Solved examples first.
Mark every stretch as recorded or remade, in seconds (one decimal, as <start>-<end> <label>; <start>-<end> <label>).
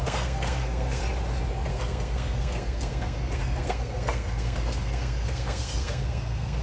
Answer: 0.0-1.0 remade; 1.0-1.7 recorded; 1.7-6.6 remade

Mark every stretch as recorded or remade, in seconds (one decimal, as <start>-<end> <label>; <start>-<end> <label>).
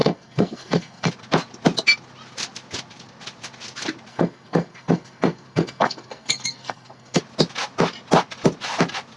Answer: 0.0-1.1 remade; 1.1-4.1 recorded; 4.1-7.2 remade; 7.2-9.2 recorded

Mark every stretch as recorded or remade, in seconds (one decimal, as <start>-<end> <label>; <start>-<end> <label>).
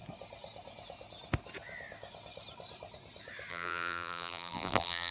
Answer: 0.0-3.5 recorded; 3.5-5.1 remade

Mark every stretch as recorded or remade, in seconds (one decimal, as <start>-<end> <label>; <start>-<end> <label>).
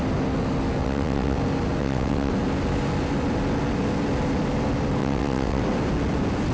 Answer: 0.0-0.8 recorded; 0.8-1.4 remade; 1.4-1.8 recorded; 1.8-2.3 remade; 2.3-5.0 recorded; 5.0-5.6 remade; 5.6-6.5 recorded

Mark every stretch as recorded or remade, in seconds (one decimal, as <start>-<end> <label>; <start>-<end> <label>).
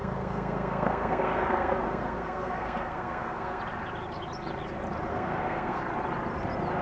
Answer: 0.0-3.6 remade; 3.6-5.1 recorded; 5.1-5.8 remade; 5.8-6.8 recorded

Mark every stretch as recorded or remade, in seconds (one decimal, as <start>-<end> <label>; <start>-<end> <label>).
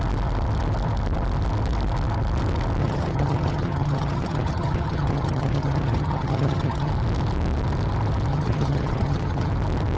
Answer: 0.0-2.8 recorded; 2.8-6.9 remade; 6.9-8.3 recorded; 8.3-9.5 remade; 9.5-10.0 recorded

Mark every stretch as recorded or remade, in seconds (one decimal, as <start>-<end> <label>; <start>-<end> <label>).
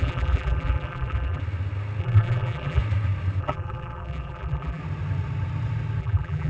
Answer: 0.0-1.4 remade; 1.4-2.0 recorded; 2.0-2.8 remade; 2.8-3.4 recorded; 3.4-4.8 remade; 4.8-6.0 recorded; 6.0-6.5 remade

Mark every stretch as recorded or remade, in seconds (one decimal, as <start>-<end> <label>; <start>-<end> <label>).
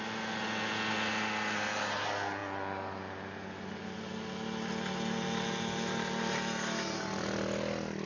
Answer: 0.0-8.1 recorded